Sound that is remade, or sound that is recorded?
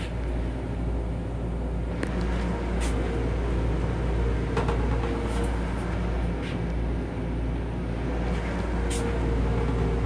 recorded